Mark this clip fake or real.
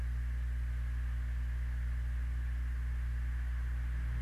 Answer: real